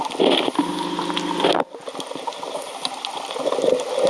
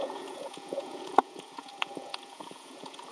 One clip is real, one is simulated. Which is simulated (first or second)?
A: second